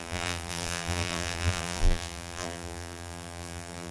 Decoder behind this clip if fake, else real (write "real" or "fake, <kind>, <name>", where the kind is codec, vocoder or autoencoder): fake, vocoder, BigVGAN v2